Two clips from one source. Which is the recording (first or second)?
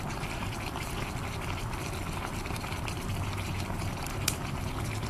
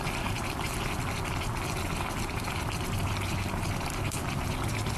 second